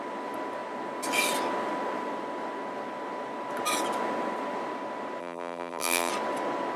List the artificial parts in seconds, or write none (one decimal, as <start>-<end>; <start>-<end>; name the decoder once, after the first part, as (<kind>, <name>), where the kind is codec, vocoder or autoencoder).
5.2-6.1 (vocoder, BigVGAN v2)